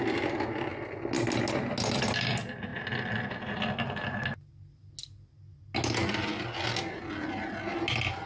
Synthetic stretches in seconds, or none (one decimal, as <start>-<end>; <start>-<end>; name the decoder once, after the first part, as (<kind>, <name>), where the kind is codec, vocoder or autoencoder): none